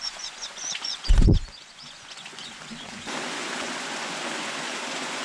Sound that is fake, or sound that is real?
fake